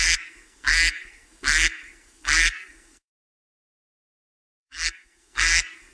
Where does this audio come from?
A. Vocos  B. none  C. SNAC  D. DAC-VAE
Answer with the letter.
C